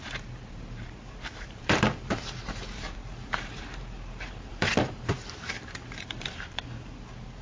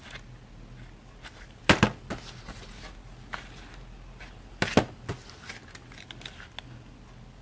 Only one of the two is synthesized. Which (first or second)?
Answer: first